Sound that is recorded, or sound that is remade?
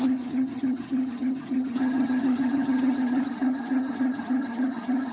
remade